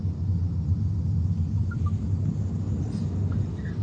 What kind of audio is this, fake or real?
real